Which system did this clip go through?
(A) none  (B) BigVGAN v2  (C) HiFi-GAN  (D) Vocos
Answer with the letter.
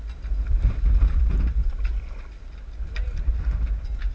A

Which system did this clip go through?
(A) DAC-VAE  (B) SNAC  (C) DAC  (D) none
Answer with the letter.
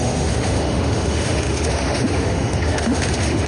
A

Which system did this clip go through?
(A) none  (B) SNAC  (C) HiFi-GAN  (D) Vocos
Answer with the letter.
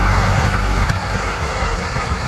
B